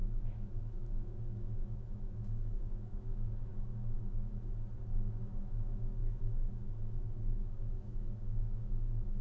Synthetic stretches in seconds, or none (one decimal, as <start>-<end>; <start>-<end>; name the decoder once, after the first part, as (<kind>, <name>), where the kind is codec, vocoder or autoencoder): 0.0-3.5 (autoencoder, DAC-VAE); 5.2-9.2